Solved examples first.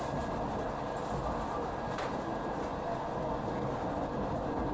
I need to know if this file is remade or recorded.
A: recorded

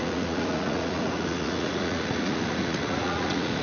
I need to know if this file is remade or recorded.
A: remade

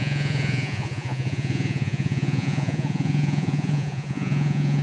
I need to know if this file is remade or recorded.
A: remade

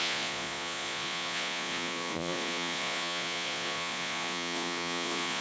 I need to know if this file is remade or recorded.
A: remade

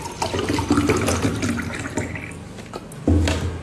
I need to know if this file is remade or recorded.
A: recorded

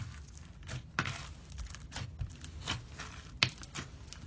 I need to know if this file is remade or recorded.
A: recorded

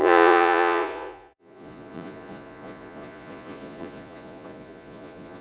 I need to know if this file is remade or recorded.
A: remade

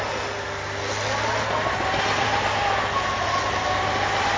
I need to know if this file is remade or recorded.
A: recorded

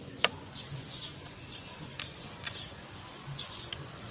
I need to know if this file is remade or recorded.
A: remade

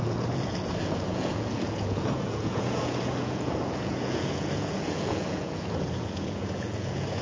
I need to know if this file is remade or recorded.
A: remade